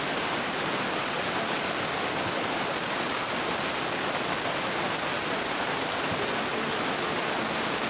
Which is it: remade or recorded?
recorded